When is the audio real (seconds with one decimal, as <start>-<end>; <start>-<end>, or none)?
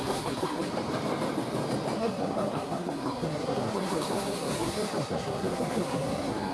0.7-2.0